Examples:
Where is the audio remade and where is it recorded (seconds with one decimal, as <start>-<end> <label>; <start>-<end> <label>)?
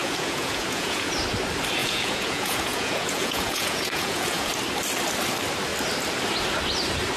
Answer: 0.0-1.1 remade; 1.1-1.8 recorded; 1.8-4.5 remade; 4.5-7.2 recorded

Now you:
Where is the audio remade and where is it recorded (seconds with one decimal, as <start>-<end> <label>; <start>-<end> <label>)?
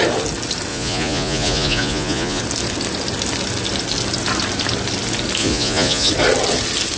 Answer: 0.0-0.7 recorded; 0.7-2.4 remade; 2.4-5.4 recorded; 5.4-6.1 remade; 6.1-7.0 recorded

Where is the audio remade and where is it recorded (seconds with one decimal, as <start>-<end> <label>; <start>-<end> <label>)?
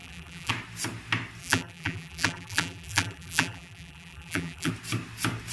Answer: 0.0-0.5 remade; 0.5-1.4 recorded; 1.4-4.7 remade; 4.7-5.5 recorded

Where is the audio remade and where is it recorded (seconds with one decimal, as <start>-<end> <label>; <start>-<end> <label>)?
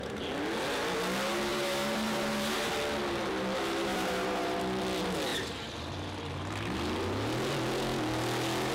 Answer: 0.0-1.5 recorded; 1.5-2.7 remade; 2.7-3.8 recorded; 3.8-4.6 remade; 4.6-8.7 recorded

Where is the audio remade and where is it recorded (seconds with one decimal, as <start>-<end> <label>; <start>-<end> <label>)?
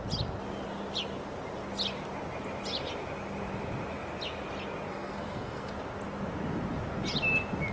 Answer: 0.0-4.9 recorded; 4.9-5.7 remade; 5.7-7.7 recorded